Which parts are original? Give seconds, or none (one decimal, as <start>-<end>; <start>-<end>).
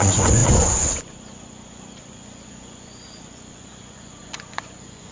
none